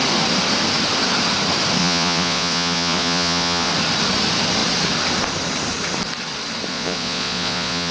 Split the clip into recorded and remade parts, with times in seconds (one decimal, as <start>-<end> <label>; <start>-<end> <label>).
0.0-1.8 recorded; 1.8-3.7 remade; 3.7-6.7 recorded; 6.7-7.9 remade